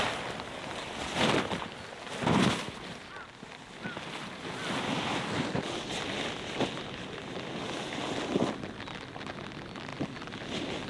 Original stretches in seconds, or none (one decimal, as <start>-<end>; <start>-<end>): 0.0-10.9